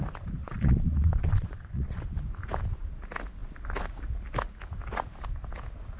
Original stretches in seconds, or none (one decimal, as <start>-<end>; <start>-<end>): 0.0-0.4; 2.0-6.0